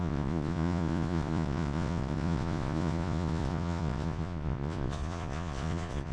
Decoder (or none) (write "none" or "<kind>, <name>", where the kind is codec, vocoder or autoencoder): vocoder, Vocos